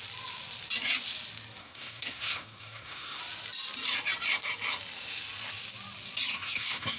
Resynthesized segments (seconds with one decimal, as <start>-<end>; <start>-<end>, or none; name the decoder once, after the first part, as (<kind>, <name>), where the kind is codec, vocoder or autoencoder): 1.6-3.2 (codec, SNAC); 6.3-7.0